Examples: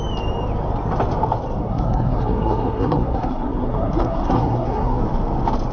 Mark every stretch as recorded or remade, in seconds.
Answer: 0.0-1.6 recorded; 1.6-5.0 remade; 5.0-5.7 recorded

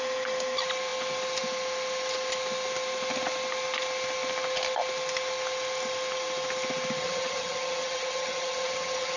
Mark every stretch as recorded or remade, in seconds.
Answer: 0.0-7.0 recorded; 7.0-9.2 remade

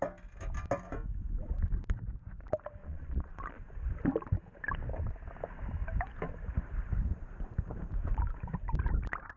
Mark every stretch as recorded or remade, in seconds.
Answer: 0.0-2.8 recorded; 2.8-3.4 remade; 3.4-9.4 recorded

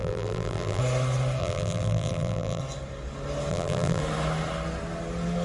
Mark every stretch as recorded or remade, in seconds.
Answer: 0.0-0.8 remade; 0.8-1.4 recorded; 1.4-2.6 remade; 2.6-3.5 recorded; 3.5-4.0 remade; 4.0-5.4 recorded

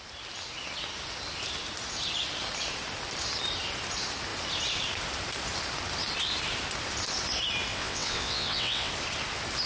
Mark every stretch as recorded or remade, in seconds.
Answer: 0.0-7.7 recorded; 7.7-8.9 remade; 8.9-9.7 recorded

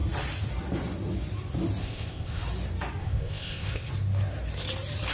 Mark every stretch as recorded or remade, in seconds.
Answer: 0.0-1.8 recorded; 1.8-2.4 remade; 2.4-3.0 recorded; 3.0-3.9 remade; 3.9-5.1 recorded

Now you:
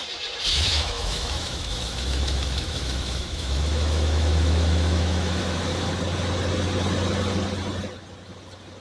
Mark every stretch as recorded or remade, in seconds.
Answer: 0.0-0.5 recorded; 0.5-5.4 remade; 5.4-8.8 recorded